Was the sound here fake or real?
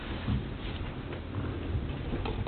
real